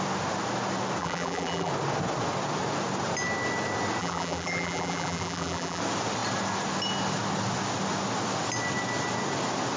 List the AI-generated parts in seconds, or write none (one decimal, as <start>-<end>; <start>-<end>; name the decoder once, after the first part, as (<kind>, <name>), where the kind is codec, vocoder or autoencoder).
1.0-1.7 (vocoder, BigVGAN v2); 4.0-5.8